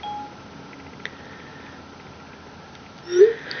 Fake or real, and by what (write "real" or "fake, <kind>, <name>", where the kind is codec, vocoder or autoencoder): real